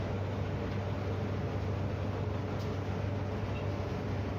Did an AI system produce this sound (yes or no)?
no